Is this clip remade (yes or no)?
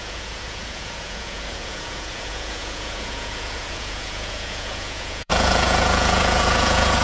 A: yes